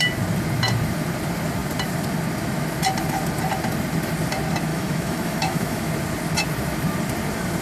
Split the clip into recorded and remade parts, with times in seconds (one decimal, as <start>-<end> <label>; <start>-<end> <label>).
0.0-4.7 recorded; 4.7-5.9 remade; 5.9-7.6 recorded